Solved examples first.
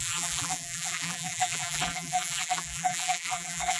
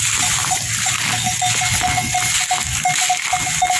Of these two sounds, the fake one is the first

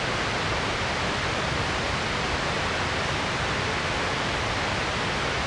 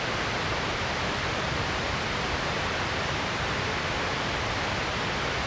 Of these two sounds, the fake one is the second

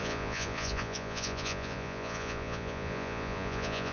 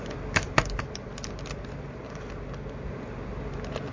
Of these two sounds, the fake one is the first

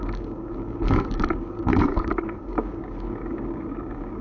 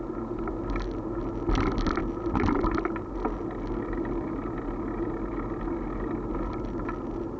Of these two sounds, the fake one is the first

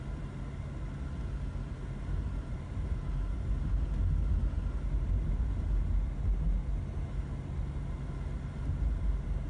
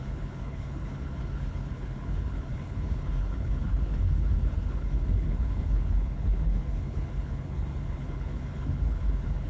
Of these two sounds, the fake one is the second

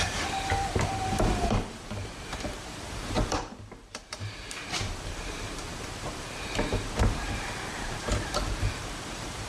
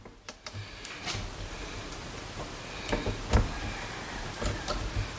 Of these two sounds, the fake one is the first